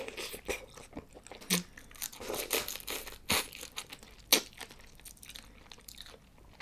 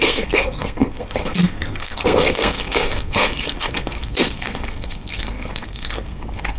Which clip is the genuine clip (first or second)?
first